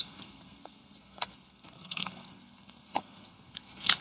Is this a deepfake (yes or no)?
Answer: yes